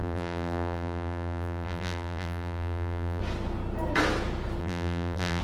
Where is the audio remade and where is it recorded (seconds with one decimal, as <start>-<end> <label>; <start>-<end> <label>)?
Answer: 0.0-3.2 remade; 3.2-4.6 recorded; 4.6-5.4 remade